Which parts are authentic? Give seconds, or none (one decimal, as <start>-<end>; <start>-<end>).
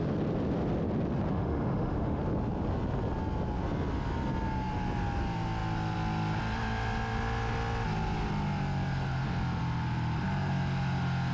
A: 0.0-1.3; 2.2-11.3